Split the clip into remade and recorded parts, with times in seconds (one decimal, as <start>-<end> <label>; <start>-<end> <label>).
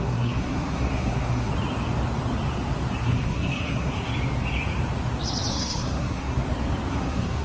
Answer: 0.0-1.5 remade; 1.5-2.9 recorded; 2.9-4.1 remade; 4.1-5.5 recorded; 5.5-6.4 remade; 6.4-6.9 recorded; 6.9-7.4 remade